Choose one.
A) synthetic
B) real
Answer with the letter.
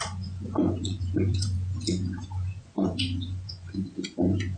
A